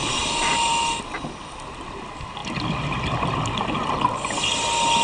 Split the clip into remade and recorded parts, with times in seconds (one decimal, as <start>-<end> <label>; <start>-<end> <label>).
0.0-5.0 recorded